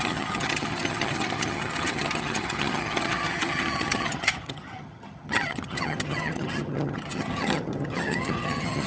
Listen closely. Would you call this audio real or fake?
fake